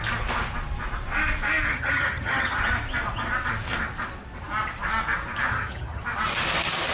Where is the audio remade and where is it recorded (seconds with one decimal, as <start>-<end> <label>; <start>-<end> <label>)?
0.0-1.7 recorded; 1.7-2.6 remade; 2.6-5.5 recorded; 5.5-6.0 remade; 6.0-6.9 recorded